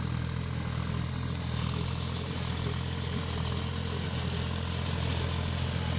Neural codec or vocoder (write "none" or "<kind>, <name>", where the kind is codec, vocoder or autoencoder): none